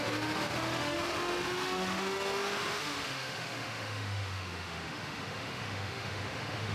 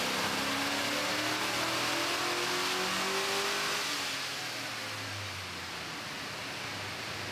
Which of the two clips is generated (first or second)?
first